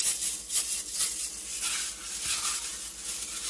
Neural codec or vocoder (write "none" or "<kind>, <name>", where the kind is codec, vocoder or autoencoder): none